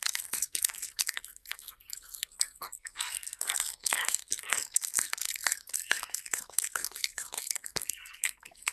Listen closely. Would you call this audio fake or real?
fake